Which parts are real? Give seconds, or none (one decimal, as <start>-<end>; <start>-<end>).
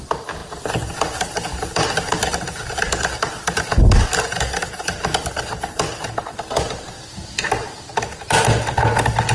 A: 0.0-9.3